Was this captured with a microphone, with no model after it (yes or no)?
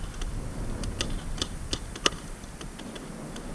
yes